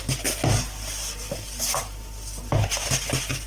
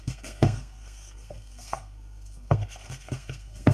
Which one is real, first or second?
first